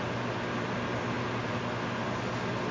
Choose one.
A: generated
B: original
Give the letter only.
B